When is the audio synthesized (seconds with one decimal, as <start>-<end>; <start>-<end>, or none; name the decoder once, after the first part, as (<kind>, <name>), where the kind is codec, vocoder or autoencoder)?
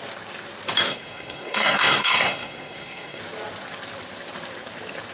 0.9-3.2 (codec, SNAC)